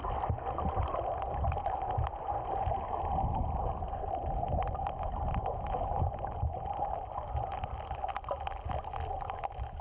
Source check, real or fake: real